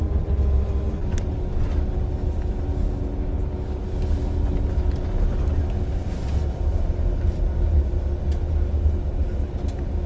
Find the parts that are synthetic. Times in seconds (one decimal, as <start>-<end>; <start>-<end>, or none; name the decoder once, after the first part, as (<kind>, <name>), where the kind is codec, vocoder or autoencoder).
none